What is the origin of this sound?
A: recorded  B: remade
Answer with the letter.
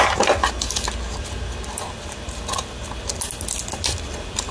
A